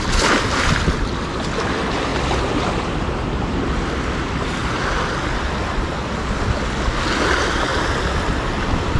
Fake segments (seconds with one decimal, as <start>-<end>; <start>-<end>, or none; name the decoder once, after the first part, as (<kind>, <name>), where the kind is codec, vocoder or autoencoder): none

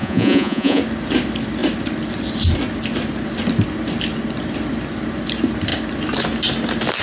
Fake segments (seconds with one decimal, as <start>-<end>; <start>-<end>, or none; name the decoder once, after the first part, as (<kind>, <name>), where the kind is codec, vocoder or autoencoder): 0.0-0.8 (vocoder, Vocos)

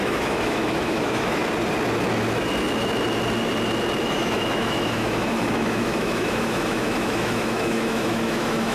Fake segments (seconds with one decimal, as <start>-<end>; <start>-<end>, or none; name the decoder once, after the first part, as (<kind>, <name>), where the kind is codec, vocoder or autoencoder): 0.0-1.4 (autoencoder, DAC-VAE); 4.0-8.7

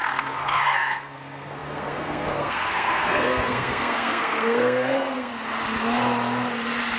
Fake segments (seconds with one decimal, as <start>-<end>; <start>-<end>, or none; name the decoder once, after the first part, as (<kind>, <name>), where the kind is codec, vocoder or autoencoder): 0.0-5.3 (codec, SNAC)